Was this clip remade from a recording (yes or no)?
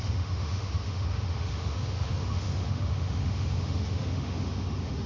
yes